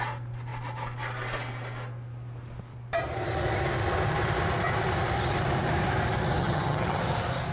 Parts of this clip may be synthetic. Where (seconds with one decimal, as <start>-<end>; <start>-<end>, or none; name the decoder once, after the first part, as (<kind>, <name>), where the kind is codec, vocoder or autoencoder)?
6.4-7.0 (vocoder, HiFi-GAN)